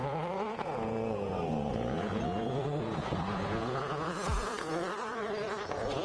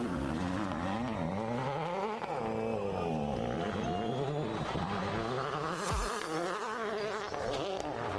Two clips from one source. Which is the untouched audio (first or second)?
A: second